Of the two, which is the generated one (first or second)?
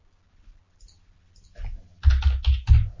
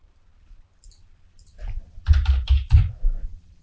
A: second